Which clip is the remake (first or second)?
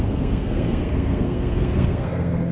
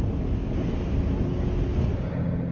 first